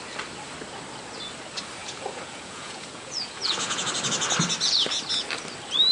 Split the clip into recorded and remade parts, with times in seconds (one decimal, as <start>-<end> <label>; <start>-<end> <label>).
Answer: 0.0-1.8 recorded; 1.8-3.9 remade; 3.9-5.9 recorded